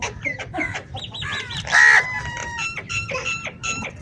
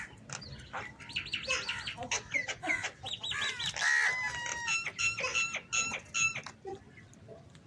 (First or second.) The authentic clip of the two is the second